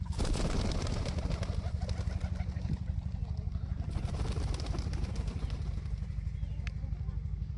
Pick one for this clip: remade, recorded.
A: recorded